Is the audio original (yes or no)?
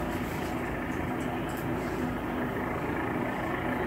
yes